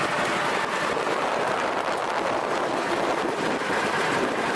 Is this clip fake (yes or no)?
no